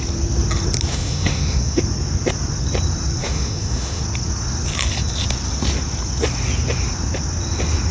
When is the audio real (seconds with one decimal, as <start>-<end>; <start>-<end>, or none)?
0.0-0.9; 1.8-3.2; 4.0-7.9